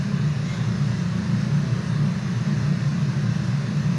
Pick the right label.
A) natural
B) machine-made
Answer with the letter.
A